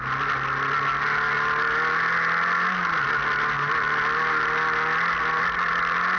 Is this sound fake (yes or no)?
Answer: no